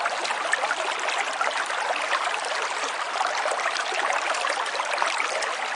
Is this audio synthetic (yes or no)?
no